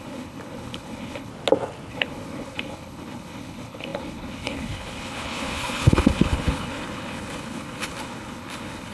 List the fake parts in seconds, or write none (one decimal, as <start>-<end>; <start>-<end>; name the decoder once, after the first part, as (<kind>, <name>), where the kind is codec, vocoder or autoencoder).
0.0-1.3 (codec, HILCodec); 1.9-8.9

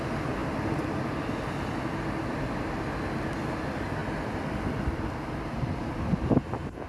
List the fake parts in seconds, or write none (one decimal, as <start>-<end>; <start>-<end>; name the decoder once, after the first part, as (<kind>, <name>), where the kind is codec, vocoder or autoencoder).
none

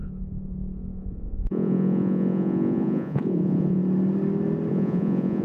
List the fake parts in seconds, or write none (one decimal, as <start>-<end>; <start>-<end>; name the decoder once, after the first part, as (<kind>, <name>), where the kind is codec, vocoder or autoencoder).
0.0-3.8 (vocoder, Vocos); 4.7-5.4

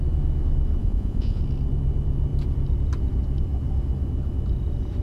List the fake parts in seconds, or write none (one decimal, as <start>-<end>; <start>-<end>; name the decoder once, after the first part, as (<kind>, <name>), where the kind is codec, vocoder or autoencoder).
0.8-1.4 (vocoder, Vocos)